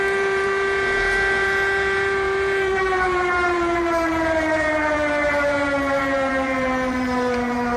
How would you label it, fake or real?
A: fake